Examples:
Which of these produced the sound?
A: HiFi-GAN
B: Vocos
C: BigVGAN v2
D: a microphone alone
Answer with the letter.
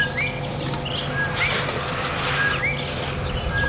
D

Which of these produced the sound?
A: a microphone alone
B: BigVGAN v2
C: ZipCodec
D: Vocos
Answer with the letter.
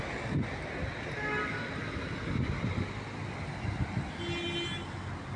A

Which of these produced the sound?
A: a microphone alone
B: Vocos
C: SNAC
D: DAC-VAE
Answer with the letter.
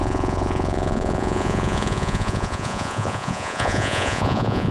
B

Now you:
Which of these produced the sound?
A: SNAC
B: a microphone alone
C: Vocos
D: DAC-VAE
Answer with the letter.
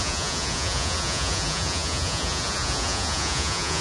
C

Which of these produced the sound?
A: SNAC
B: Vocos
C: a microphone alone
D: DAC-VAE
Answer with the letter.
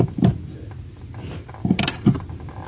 C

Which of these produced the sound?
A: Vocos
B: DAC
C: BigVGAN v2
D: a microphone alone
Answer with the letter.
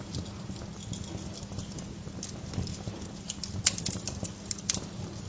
D